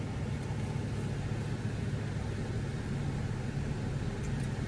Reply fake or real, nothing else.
real